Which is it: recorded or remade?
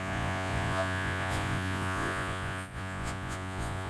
remade